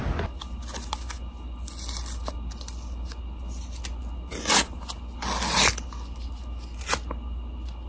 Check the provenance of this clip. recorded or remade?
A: recorded